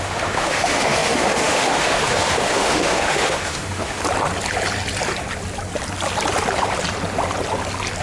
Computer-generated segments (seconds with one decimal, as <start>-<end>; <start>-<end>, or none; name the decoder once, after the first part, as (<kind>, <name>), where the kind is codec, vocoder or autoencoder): 0.0-4.0 (autoencoder, DAC-VAE)